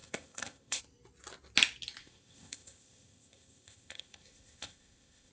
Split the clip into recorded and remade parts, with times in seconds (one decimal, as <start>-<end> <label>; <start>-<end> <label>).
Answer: 0.0-0.8 remade; 0.8-2.0 recorded; 2.0-5.3 remade